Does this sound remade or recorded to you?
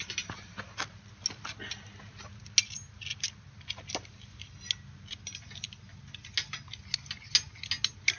recorded